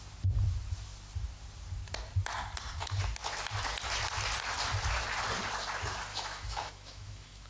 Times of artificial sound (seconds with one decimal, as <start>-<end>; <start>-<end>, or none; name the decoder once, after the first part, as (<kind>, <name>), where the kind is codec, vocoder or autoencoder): 6.1-7.5 (autoencoder, DAC-VAE)